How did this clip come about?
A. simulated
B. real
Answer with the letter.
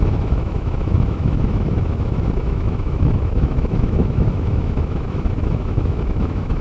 A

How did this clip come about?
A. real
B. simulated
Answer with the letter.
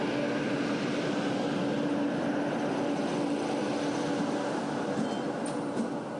A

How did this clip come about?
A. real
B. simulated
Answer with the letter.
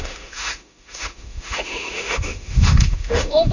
B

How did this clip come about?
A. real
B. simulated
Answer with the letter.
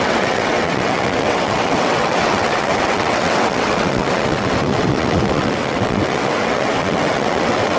B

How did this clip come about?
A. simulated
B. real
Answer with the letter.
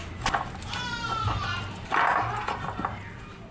B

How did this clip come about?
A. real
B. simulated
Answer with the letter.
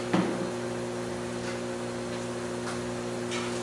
A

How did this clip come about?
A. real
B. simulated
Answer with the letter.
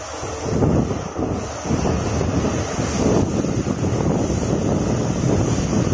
A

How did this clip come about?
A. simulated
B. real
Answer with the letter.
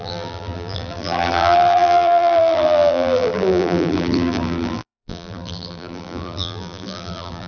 A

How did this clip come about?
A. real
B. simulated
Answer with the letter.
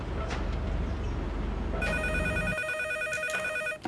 A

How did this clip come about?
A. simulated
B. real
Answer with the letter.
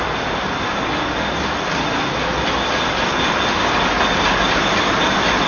B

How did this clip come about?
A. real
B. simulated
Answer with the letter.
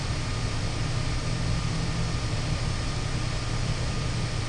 A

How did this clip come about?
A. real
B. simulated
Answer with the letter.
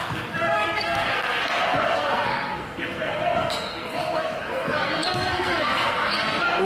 B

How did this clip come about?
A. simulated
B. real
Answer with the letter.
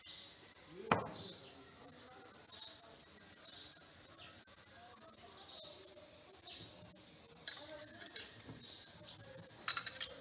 B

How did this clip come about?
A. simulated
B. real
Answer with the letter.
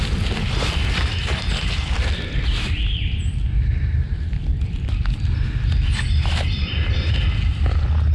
B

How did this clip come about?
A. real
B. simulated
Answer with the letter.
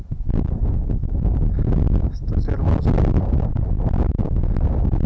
A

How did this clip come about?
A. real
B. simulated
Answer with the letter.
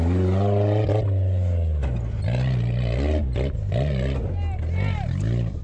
A